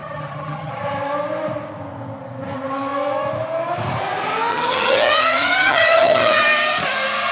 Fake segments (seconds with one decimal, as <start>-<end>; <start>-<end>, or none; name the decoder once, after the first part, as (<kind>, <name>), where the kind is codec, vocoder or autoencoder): 0.0-0.7 (vocoder, HiFi-GAN); 4.5-6.4